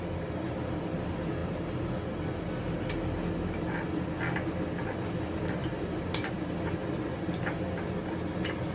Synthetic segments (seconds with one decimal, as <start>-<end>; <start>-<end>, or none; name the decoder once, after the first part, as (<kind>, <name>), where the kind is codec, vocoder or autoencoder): none